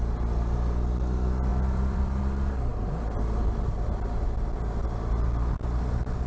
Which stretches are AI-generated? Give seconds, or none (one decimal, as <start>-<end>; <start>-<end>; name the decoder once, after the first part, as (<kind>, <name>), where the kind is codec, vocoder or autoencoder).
1.5-2.2 (vocoder, BigVGAN v2)